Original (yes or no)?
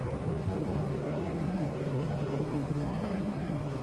no